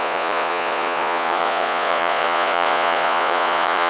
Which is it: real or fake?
fake